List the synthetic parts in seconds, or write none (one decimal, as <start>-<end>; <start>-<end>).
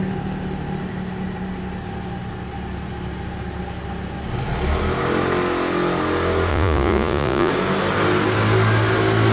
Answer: 6.5-7.5